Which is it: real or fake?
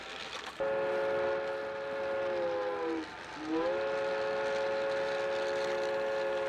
real